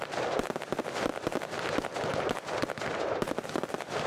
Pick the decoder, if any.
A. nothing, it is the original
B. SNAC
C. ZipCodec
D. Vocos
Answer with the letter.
A